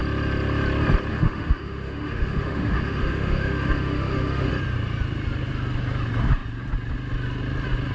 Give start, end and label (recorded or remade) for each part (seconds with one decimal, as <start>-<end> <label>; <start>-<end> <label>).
0.0-1.1 recorded; 1.1-4.5 remade; 4.5-7.9 recorded